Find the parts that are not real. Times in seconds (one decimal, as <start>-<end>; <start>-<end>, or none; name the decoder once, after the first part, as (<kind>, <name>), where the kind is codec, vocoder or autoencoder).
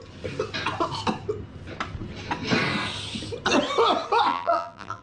4.3-5.0 (vocoder, BigVGAN v2)